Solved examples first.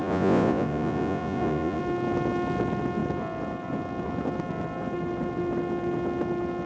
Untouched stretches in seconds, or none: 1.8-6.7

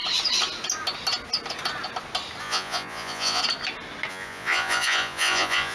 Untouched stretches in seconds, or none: 0.0-2.4; 3.4-4.1

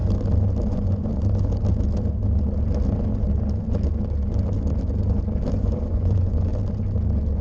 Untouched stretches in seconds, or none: 0.0-0.7; 1.1-5.5; 6.5-7.4

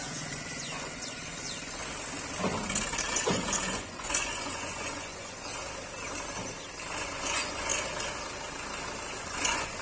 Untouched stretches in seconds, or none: 1.8-3.1; 5.5-7.0; 7.7-9.2

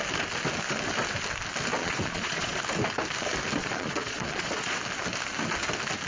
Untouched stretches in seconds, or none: 0.0-1.8; 2.6-3.6; 4.8-6.1